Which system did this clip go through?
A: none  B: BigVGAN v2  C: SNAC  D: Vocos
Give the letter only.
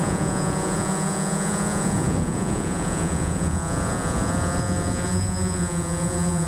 D